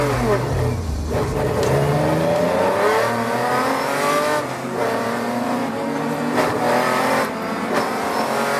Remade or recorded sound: recorded